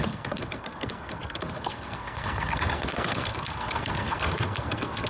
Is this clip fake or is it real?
fake